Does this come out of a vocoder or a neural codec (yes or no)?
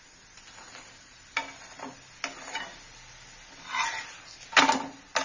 no